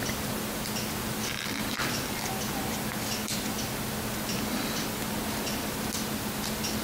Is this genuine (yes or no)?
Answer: yes